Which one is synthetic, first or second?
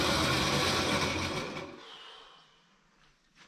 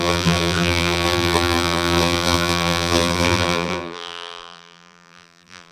second